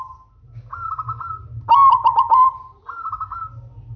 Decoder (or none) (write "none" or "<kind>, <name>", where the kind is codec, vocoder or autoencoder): none